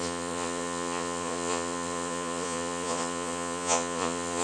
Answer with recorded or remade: remade